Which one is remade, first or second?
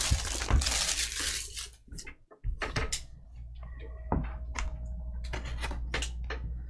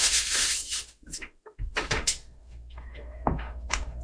second